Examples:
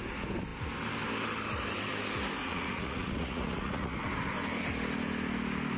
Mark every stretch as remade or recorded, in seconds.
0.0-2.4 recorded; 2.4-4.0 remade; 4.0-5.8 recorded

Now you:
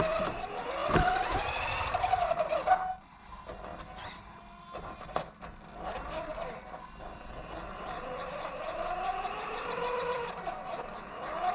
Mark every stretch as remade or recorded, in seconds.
0.0-11.5 recorded

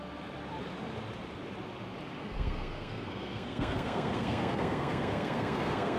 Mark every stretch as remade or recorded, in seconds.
0.0-2.2 recorded; 2.2-6.0 remade

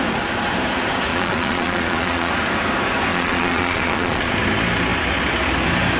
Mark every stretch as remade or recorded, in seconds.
0.0-1.1 recorded; 1.1-2.3 remade; 2.3-3.1 recorded; 3.1-4.3 remade; 4.3-6.0 recorded

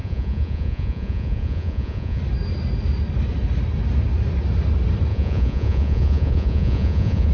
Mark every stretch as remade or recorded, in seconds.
0.0-2.2 remade; 2.2-5.1 recorded; 5.1-7.3 remade